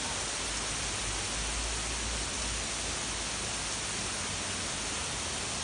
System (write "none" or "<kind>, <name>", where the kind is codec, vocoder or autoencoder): none